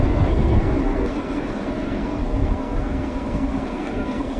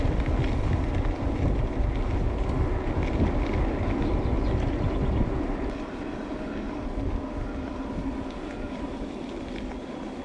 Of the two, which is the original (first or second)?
second